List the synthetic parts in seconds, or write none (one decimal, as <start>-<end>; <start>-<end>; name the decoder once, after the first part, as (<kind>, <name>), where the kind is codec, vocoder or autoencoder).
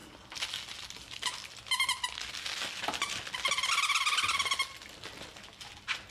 none